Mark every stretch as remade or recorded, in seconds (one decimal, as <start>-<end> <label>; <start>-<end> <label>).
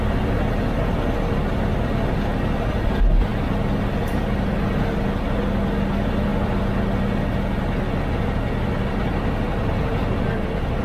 0.0-10.8 recorded